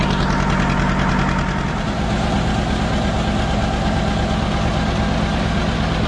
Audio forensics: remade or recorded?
recorded